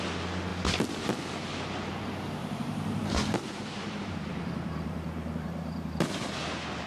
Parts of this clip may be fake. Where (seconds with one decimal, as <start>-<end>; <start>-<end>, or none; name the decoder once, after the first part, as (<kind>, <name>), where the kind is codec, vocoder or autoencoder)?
2.4-6.3 (vocoder, BigVGAN v2)